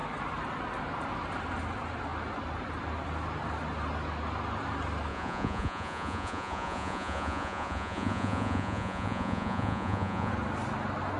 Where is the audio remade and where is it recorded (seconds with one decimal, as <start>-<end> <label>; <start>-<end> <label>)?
0.0-5.1 recorded; 5.1-10.3 remade; 10.3-11.2 recorded